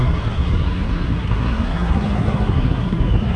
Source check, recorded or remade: remade